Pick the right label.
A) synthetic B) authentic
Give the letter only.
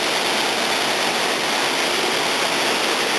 B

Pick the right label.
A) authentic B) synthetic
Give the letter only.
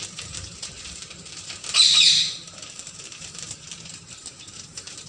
B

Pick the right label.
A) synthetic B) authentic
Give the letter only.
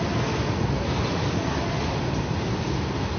B